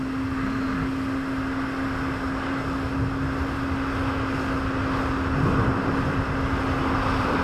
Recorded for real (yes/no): yes